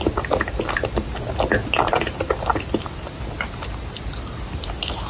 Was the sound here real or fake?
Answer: real